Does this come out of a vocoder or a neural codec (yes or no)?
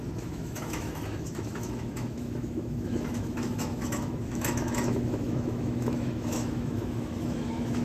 yes